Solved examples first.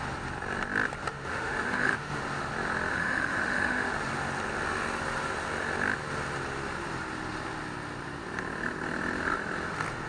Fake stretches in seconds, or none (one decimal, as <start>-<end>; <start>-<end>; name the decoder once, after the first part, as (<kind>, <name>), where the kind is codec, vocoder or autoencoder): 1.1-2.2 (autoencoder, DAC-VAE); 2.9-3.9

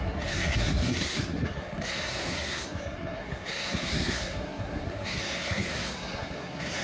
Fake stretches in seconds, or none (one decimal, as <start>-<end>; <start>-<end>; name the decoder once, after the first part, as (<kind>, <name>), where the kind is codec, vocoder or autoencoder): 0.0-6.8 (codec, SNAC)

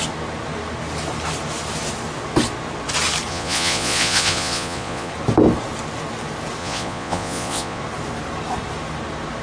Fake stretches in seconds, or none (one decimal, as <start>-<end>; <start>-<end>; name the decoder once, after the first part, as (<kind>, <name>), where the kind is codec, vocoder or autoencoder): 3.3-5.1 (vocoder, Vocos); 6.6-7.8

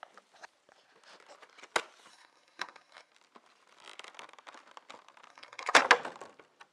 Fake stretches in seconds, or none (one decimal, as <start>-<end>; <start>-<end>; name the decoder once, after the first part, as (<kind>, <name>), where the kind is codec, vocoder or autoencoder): 2.1-3.1 (codec, SNAC); 5.3-5.8

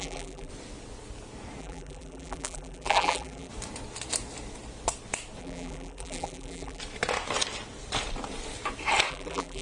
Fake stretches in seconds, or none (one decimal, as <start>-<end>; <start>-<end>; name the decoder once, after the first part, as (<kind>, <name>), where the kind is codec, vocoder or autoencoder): 0.0-0.5 (vocoder, BigVGAN v2); 1.6-3.5; 5.4-6.8; 9.1-9.6

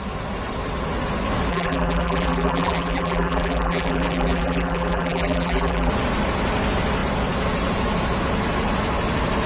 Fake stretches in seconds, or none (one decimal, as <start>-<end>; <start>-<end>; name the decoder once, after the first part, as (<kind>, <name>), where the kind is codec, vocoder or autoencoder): 1.5-5.9 (vocoder, BigVGAN v2)

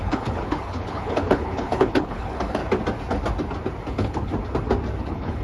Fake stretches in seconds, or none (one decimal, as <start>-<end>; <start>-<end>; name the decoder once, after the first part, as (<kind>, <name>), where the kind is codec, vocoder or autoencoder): 0.0-2.6 (codec, HILCodec); 3.9-4.3; 5.0-5.4